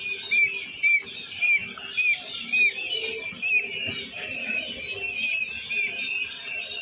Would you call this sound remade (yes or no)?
no